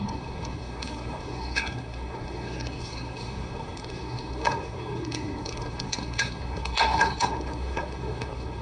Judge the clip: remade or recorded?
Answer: remade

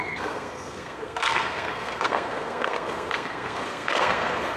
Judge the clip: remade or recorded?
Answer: remade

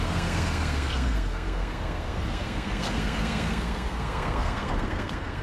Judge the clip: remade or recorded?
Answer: remade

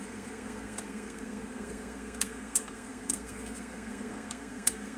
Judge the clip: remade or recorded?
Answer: remade